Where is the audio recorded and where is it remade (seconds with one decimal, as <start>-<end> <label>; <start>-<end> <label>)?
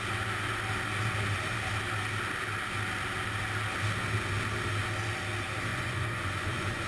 0.0-5.7 recorded; 5.7-6.9 remade